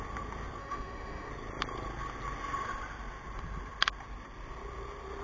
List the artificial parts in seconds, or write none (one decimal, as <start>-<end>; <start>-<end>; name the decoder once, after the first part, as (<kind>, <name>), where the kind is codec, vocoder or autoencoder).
0.6-1.3 (autoencoder, DAC-VAE)